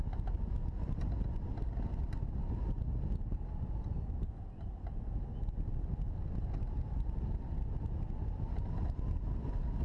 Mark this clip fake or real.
real